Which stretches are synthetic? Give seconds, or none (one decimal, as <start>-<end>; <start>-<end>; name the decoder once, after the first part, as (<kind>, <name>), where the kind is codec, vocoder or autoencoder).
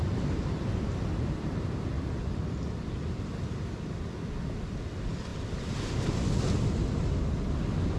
none